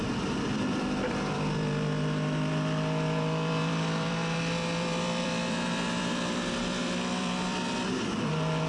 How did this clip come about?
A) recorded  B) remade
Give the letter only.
B